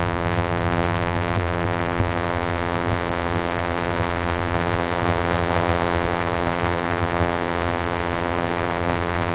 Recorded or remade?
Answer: remade